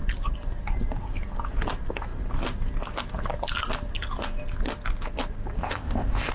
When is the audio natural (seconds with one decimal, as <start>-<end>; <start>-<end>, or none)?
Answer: 0.0-5.6